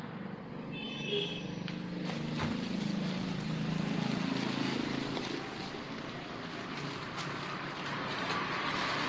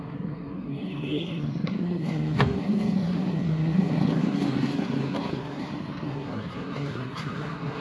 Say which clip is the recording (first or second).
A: first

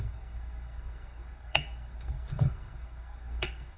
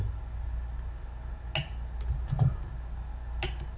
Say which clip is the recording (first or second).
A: second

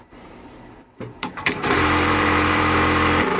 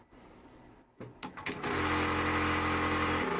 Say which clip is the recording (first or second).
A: second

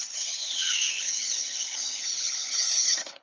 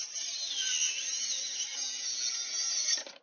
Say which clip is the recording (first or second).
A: second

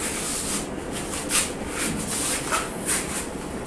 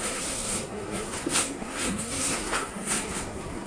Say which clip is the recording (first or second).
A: first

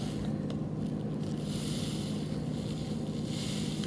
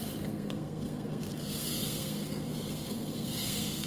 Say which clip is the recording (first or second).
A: first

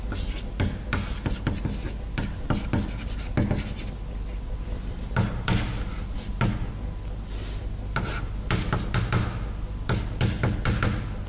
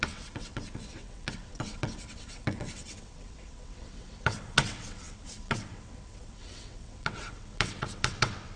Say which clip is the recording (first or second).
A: first